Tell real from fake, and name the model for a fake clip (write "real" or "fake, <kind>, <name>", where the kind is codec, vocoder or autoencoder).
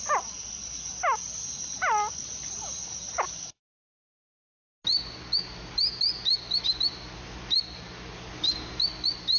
real